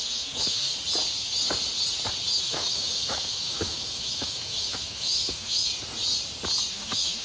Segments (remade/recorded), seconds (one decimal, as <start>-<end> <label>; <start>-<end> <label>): 0.0-0.7 remade; 0.7-2.4 recorded; 2.4-5.7 remade; 5.7-6.7 recorded; 6.7-7.2 remade